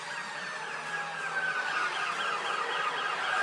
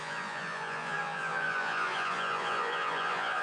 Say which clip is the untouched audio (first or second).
first